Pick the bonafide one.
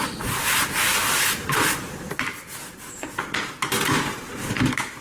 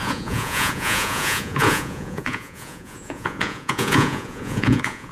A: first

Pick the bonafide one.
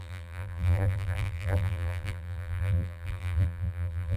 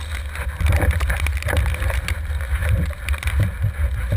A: second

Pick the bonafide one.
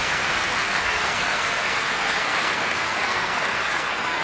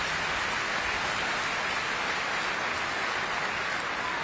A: second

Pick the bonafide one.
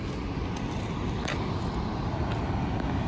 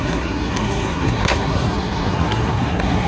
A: first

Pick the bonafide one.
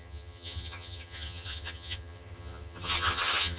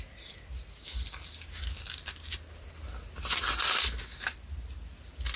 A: second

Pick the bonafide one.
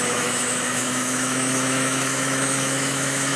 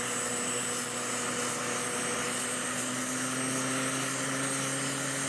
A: second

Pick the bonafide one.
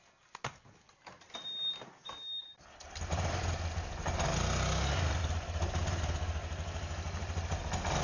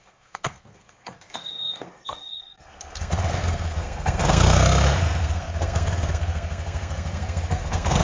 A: first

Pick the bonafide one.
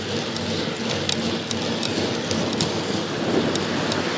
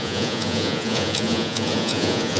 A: first